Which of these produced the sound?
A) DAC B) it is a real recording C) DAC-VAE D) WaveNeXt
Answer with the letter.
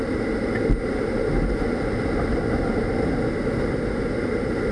B